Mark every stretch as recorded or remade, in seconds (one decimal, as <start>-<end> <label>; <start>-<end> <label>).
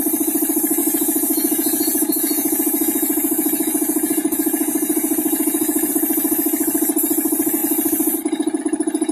0.0-0.8 recorded; 0.8-5.9 remade; 5.9-9.1 recorded